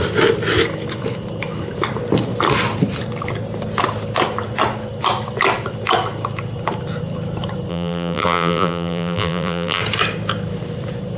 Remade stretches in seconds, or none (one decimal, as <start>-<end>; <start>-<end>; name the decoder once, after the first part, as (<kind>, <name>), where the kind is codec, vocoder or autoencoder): 7.7-9.8 (vocoder, BigVGAN v2)